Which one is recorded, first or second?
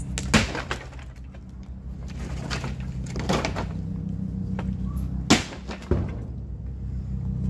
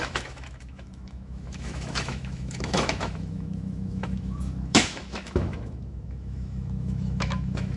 first